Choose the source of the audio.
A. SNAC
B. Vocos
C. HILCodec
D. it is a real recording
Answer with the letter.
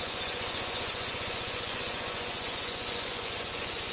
B